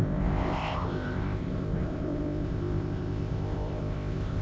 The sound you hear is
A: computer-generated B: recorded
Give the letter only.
A